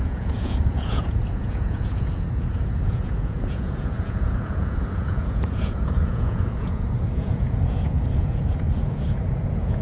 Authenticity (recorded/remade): remade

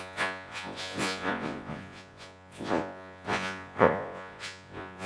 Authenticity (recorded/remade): remade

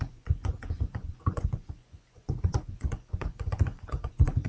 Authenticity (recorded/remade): remade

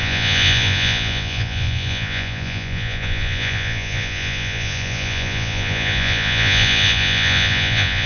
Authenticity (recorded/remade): remade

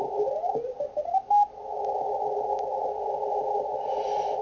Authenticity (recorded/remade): recorded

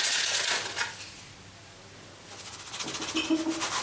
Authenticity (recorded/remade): recorded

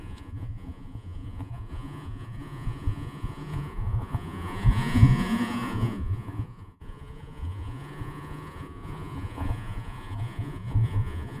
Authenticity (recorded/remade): remade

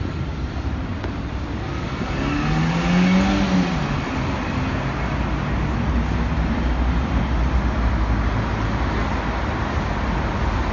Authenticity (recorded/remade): recorded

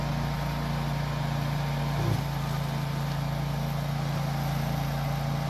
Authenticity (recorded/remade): recorded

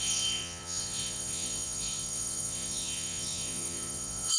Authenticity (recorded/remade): remade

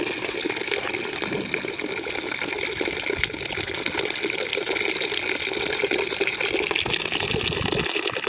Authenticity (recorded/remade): recorded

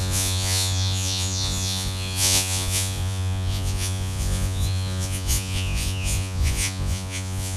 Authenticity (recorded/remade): remade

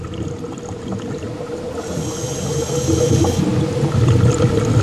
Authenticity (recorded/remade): recorded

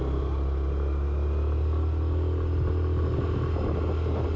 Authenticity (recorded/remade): recorded